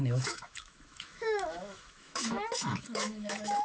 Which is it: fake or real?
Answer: fake